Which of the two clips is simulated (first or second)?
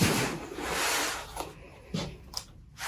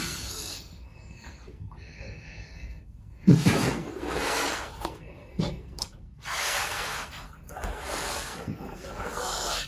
second